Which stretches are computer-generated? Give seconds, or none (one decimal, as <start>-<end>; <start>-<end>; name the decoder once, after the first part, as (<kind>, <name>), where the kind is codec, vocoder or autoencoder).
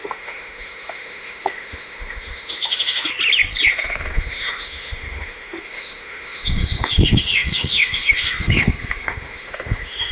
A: 0.0-3.1 (autoencoder, DAC-VAE); 3.7-10.1